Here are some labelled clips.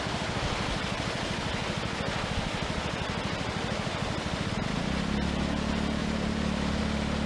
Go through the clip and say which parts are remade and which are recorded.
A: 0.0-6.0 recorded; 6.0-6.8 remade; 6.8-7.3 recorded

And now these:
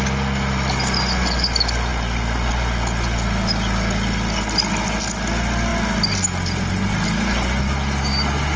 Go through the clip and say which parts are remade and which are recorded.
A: 0.0-8.6 recorded

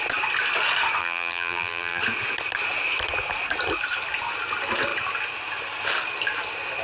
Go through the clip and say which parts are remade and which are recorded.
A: 0.0-1.0 recorded; 1.0-2.0 remade; 2.0-6.8 recorded

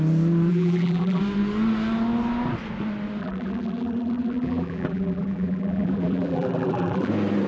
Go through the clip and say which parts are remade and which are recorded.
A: 0.0-0.5 recorded; 0.5-1.2 remade; 1.2-3.2 recorded; 3.2-7.1 remade; 7.1-7.5 recorded

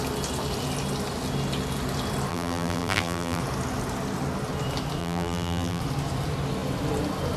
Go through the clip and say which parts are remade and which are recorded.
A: 0.0-2.3 recorded; 2.3-3.4 remade; 3.4-5.0 recorded; 5.0-5.8 remade; 5.8-7.4 recorded